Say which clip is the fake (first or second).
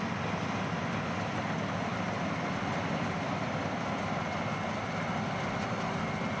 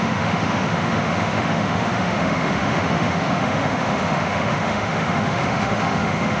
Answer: second